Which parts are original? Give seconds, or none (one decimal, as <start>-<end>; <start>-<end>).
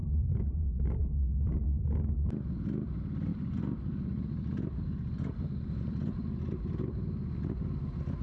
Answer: 2.5-3.3; 5.8-8.2